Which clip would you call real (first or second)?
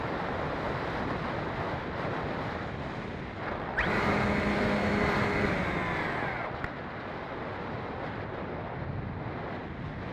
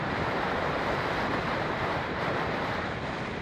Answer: first